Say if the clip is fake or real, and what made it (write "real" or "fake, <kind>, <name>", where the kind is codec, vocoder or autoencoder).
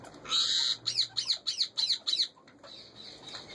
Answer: real